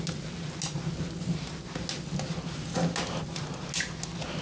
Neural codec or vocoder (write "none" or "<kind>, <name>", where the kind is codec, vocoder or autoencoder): none